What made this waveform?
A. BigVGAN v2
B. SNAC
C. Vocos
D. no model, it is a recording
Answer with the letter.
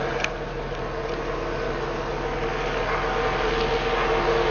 D